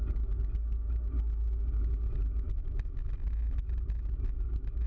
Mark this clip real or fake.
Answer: real